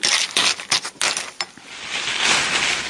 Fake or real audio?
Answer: real